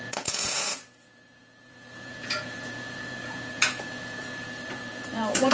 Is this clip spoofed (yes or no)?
yes